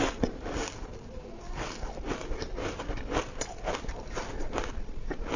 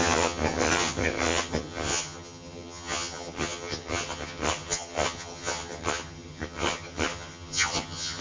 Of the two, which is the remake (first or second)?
second